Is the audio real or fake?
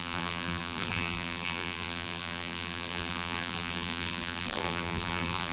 fake